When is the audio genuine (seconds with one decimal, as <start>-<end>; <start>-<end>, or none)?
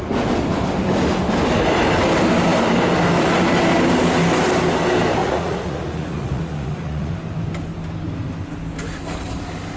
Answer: 0.0-5.2; 7.1-9.8